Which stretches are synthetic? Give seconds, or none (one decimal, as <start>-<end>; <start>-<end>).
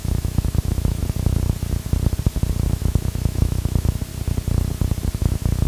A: 0.0-1.0; 2.8-4.1; 5.2-5.7